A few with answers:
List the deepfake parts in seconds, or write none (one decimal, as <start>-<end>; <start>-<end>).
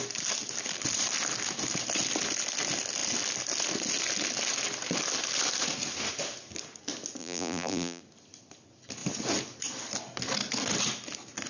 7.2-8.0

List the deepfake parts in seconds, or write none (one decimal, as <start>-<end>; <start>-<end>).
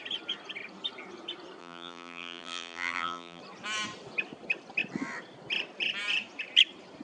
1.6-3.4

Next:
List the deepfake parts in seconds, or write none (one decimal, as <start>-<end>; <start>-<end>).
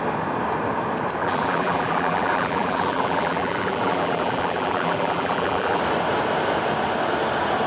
1.2-5.8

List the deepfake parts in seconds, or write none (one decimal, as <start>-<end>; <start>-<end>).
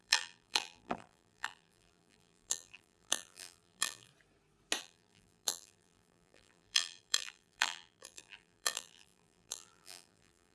0.0-4.1; 4.8-10.5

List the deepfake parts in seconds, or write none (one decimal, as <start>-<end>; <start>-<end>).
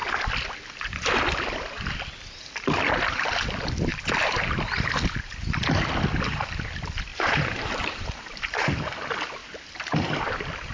7.1-8.7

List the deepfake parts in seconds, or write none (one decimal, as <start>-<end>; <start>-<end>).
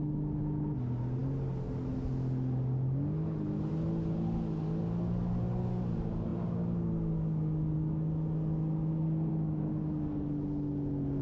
none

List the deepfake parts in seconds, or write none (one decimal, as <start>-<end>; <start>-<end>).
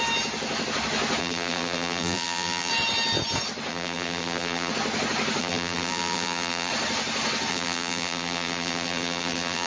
1.2-2.7; 3.7-4.7; 5.4-6.7; 7.5-9.7